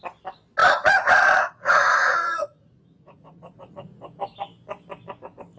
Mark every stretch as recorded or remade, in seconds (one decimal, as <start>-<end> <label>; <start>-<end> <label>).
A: 0.0-0.6 recorded; 0.6-4.0 remade; 4.0-5.6 recorded